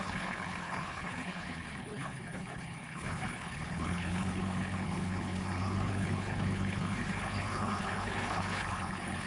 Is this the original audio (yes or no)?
no